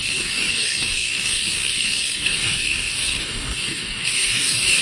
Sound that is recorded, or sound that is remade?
remade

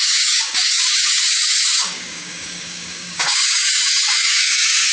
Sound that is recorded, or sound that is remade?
remade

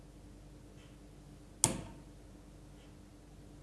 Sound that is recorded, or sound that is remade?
recorded